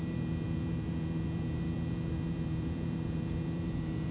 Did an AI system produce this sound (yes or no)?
yes